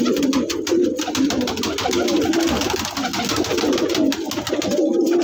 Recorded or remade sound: recorded